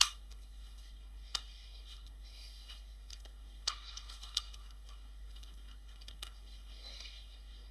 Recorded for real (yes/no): no